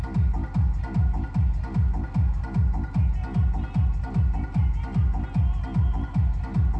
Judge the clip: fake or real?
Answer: real